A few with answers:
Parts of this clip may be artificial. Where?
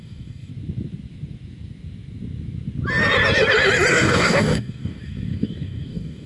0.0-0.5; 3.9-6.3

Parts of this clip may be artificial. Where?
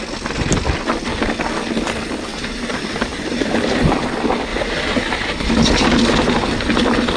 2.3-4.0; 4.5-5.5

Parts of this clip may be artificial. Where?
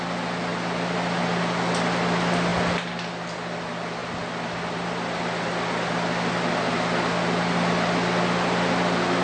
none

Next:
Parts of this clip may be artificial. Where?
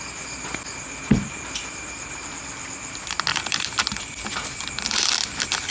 3.3-4.0